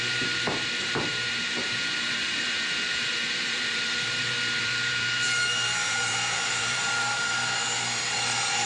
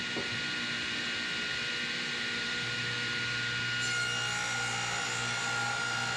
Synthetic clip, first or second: first